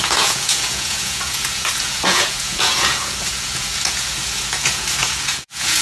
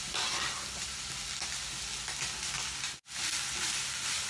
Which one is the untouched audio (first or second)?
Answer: second